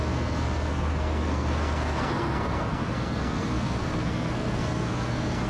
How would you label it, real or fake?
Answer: fake